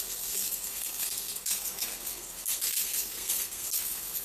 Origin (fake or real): fake